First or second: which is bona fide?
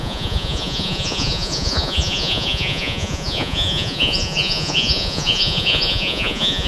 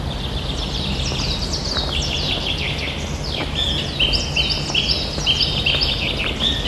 second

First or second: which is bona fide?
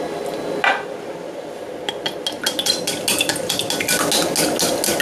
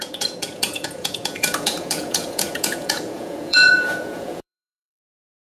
first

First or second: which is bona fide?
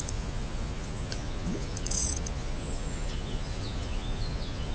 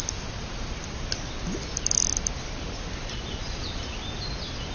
second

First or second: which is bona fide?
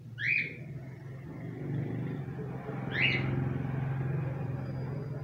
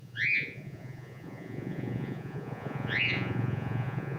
first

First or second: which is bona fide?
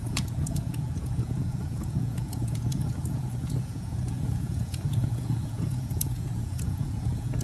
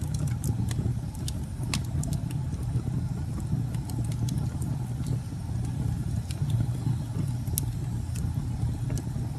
second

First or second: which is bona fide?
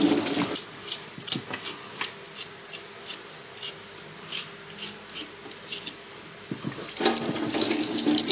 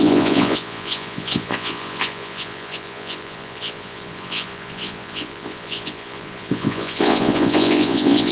first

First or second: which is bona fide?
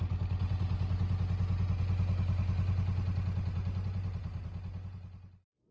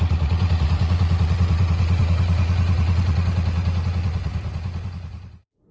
first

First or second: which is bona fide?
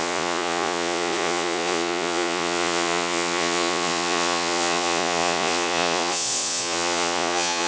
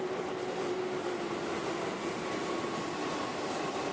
second